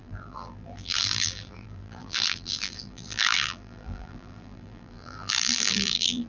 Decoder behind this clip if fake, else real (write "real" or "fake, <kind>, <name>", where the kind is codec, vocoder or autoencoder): fake, vocoder, BigVGAN v2